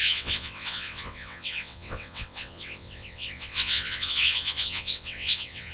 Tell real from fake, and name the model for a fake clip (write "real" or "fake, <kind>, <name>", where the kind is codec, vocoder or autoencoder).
fake, vocoder, WaveNeXt